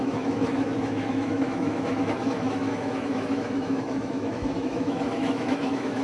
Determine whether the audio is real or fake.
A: fake